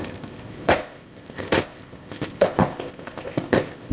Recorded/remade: remade